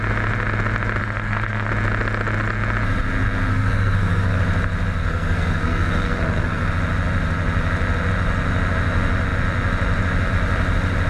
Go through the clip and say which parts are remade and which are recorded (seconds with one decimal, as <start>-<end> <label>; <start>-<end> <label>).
0.0-1.0 recorded; 1.0-1.7 remade; 1.7-3.5 recorded; 3.5-4.4 remade; 4.4-5.0 recorded; 5.0-6.7 remade; 6.7-11.1 recorded

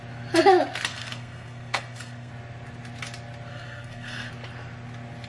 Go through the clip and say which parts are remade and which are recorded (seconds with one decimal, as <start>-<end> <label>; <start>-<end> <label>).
0.0-0.9 recorded; 0.9-2.3 remade; 2.3-3.5 recorded; 3.5-4.3 remade; 4.3-5.3 recorded

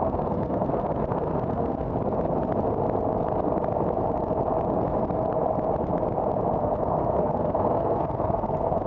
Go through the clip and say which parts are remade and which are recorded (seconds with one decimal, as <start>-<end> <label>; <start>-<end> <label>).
0.0-1.9 remade; 1.9-6.6 recorded; 6.6-8.9 remade

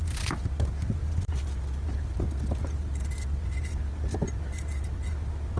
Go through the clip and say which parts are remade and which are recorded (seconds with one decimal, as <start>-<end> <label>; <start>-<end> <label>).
0.0-5.6 recorded

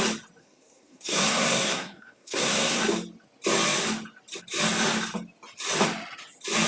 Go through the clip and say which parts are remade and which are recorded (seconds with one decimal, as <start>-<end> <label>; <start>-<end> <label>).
0.0-0.4 recorded; 0.4-2.8 remade; 2.8-6.7 recorded